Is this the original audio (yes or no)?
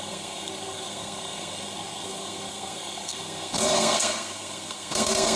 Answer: no